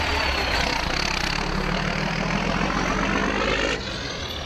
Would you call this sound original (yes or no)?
yes